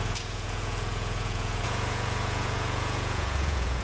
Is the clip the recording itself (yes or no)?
no